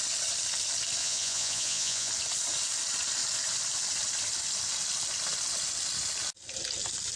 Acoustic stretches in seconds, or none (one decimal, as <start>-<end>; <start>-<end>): 0.0-1.0; 2.1-7.2